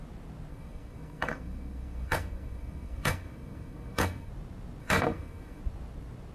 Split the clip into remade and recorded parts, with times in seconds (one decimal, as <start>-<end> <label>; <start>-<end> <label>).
0.0-0.5 recorded; 0.5-4.3 remade; 4.3-4.8 recorded; 4.8-5.6 remade; 5.6-6.3 recorded